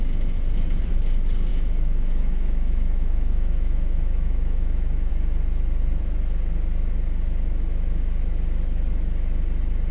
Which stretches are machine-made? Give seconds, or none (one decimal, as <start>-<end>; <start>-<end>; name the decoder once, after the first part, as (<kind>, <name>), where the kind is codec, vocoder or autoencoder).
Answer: 1.5-5.1 (autoencoder, DAC-VAE)